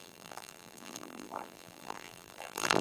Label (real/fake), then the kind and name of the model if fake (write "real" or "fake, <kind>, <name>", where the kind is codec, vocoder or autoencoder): fake, vocoder, BigVGAN v2